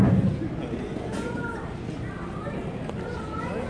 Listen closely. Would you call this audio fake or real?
real